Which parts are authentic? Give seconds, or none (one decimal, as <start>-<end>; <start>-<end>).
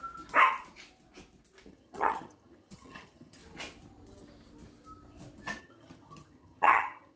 0.0-1.7; 3.4-5.6